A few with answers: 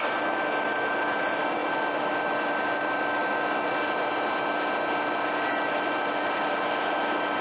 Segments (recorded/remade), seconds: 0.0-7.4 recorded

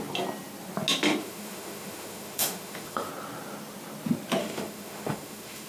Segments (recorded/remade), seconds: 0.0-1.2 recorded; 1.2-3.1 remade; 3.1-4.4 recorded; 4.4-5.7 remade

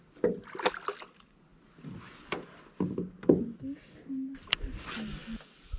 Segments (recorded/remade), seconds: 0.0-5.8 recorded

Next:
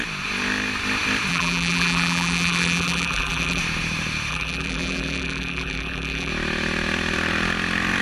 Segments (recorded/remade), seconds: 0.0-1.3 recorded; 1.3-3.6 remade; 3.6-4.3 recorded; 4.3-6.3 remade; 6.3-8.0 recorded

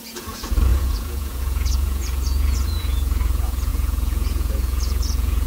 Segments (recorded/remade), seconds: 0.0-5.5 remade